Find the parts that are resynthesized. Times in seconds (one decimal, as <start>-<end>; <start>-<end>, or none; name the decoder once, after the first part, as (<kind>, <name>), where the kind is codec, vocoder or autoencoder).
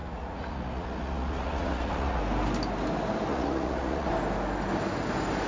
0.0-2.2 (vocoder, Vocos); 3.3-4.1